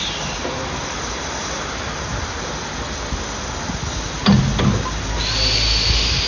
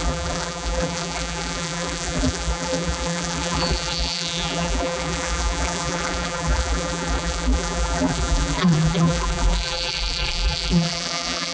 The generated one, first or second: second